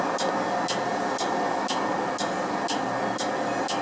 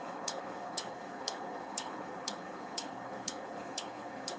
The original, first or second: first